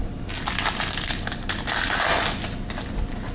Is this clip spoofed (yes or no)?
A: no